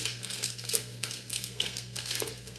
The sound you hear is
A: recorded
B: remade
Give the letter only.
B